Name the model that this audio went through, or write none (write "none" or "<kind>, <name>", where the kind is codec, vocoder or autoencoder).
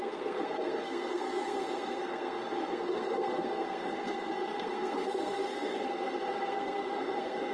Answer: codec, SNAC